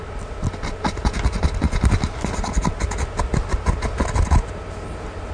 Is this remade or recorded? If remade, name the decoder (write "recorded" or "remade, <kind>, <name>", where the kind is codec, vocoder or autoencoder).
recorded